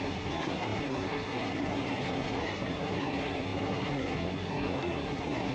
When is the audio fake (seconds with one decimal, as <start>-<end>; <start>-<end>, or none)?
0.0-5.5